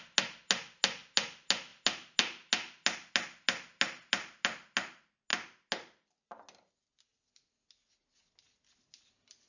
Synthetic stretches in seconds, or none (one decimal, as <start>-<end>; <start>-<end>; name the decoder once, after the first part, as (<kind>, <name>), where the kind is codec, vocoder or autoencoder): none